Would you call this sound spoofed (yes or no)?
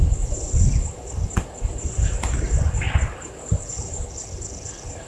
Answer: no